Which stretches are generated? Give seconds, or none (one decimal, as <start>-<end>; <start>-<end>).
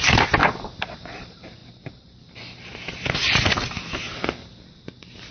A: none